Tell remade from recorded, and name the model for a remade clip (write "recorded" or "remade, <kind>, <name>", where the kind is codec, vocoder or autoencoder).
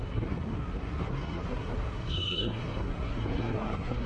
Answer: remade, codec, SNAC